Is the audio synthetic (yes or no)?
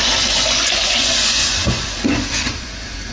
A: yes